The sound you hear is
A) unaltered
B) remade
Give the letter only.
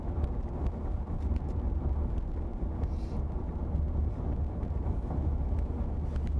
A